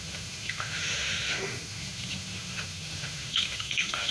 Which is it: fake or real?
fake